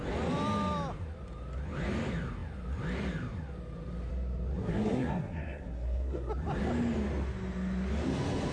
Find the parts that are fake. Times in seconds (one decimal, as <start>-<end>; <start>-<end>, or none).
4.6-6.3